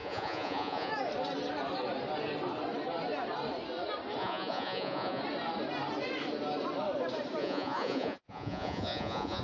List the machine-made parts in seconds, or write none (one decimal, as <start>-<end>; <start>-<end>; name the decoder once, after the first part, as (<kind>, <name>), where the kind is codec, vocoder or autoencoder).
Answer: 0.0-0.9 (vocoder, Vocos); 4.2-5.2; 7.4-9.4